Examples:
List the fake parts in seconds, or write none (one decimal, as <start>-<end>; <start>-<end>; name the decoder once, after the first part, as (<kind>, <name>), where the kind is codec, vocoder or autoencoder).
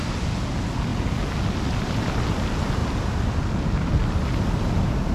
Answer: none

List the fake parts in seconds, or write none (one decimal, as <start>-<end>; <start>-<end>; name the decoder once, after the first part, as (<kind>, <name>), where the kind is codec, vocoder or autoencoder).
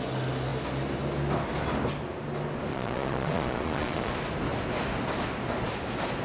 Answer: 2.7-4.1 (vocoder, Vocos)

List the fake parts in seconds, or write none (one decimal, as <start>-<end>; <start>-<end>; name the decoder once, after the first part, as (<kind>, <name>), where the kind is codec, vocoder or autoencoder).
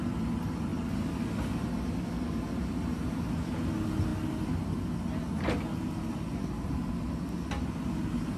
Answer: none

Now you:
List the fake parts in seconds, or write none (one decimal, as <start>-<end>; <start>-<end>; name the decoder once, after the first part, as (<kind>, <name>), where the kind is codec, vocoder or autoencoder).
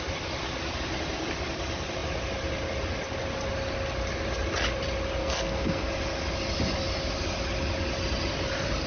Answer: 5.2-5.9 (codec, SNAC)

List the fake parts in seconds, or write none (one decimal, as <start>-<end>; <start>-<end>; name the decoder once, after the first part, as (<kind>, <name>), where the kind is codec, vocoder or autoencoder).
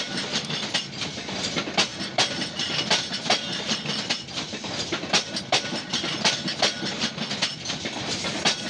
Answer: none